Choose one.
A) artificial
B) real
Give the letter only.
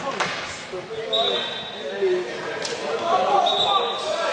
B